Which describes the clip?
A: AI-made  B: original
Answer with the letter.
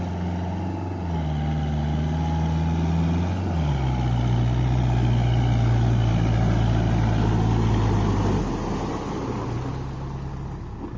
B